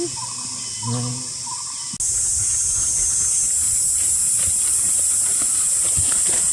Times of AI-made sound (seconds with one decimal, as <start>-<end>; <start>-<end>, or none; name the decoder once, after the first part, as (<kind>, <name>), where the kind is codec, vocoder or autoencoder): none

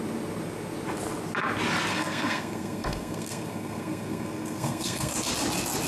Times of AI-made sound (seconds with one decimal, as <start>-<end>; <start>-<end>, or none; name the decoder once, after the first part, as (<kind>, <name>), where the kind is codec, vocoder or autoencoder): 1.9-5.1 (codec, SNAC)

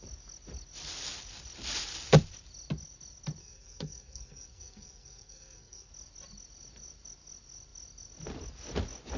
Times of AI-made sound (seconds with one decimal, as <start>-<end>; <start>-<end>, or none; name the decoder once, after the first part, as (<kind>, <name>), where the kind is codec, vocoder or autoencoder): 3.4-5.9 (codec, SNAC)

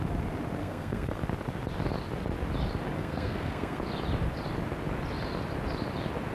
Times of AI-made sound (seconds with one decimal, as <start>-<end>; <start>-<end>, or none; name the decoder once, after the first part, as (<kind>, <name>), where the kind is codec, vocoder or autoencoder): 0.6-1.2 (codec, SNAC); 3.0-3.8

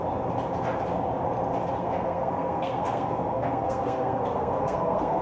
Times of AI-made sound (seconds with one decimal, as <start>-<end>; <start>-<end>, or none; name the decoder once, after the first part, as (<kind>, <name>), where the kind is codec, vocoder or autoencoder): 1.8-5.2 (codec, SNAC)

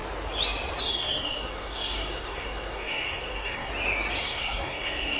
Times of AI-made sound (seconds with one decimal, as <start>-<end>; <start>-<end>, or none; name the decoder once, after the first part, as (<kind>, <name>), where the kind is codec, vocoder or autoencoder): 0.8-3.7 (codec, SNAC); 4.2-5.2

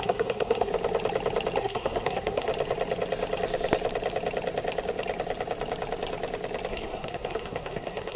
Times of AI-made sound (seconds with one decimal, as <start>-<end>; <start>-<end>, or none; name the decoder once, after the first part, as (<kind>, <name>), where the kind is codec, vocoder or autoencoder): 0.0-0.7 (codec, SNAC); 1.6-2.5; 6.7-8.2